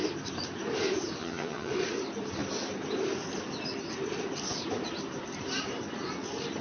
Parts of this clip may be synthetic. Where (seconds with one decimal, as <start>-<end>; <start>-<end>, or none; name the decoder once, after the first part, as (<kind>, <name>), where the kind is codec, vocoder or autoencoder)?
1.2-1.7 (vocoder, HiFi-GAN)